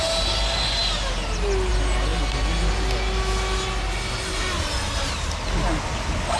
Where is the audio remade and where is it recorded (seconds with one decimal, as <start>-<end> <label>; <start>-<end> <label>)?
0.0-6.4 recorded